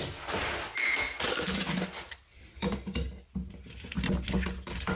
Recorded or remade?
recorded